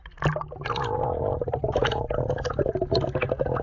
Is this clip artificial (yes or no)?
no